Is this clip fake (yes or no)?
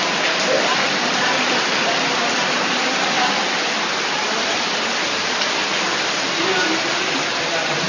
no